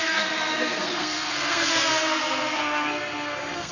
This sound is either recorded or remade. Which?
remade